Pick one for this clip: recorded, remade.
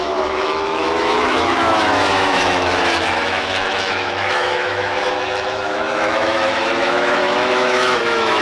remade